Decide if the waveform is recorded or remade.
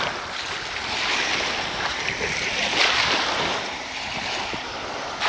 recorded